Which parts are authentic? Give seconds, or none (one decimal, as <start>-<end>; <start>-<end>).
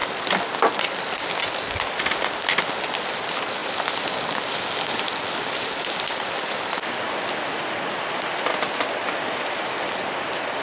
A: 0.0-10.6